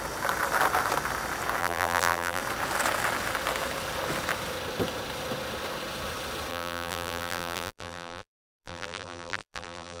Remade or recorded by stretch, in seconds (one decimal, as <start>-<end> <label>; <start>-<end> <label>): 0.0-1.6 recorded; 1.6-2.4 remade; 2.4-6.5 recorded; 6.5-10.0 remade